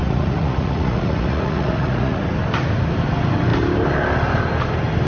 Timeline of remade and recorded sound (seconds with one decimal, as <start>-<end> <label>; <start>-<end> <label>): 0.0-2.2 remade; 2.2-5.1 recorded